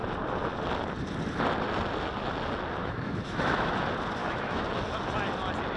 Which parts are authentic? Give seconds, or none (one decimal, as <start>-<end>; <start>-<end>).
0.0-2.8; 3.8-4.2; 4.7-5.8